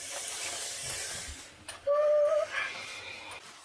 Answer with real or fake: real